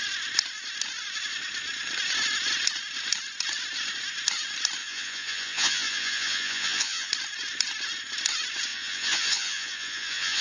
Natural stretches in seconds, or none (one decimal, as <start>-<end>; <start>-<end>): 0.0-4.8; 7.1-8.7